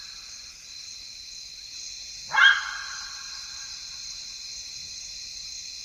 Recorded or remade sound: recorded